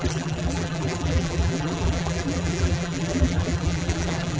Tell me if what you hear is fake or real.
fake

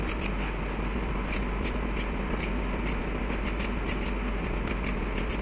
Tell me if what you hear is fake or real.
real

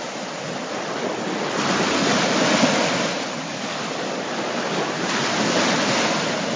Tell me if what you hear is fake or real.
real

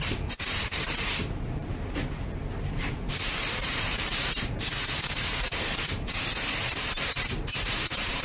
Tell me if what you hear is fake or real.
fake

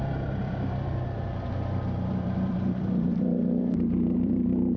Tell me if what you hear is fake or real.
fake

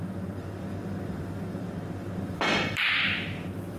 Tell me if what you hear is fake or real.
fake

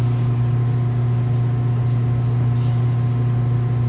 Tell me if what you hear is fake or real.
real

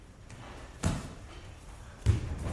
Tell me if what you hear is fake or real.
real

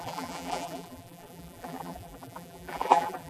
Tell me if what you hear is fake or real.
fake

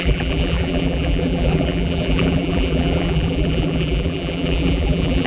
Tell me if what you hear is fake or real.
fake